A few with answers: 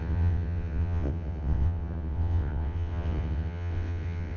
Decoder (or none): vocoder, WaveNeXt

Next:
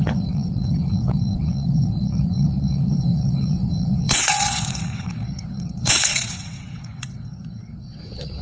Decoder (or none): vocoder, WaveNeXt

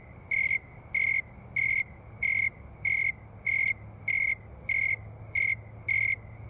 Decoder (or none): none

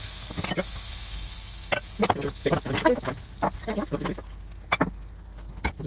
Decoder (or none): none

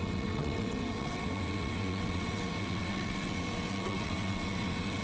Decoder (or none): vocoder, WaveNeXt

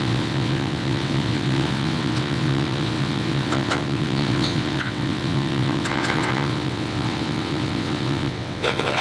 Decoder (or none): vocoder, WaveNeXt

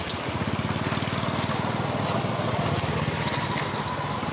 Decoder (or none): none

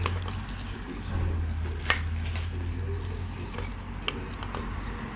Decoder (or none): none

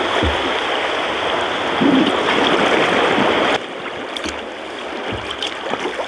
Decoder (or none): none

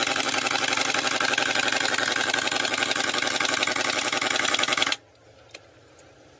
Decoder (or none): none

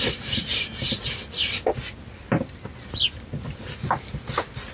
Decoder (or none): none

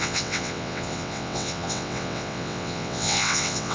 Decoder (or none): vocoder, WaveNeXt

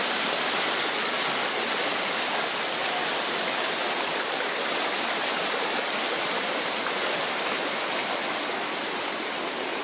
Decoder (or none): none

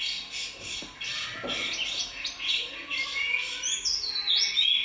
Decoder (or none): none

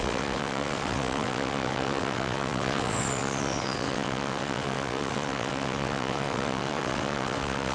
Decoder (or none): vocoder, WaveNeXt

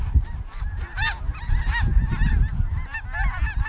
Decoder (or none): none